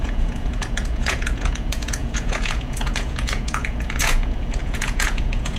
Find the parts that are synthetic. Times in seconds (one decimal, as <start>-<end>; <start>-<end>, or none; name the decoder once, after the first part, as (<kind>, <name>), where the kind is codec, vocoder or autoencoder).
0.0-5.6 (vocoder, Vocos)

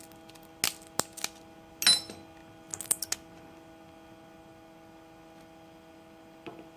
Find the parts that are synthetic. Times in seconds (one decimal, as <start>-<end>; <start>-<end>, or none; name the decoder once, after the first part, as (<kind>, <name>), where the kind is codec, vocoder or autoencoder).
none

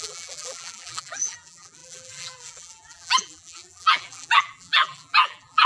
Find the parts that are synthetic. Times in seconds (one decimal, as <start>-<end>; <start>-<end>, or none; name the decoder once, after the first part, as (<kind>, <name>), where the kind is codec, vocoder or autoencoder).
0.0-5.7 (vocoder, BigVGAN v2)